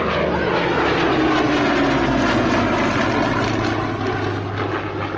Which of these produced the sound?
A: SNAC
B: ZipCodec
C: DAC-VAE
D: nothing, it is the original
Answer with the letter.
D